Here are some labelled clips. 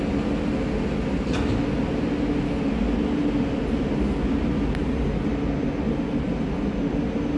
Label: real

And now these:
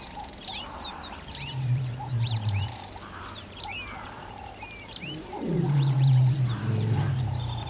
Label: fake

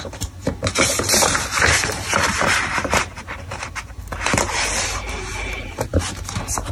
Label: fake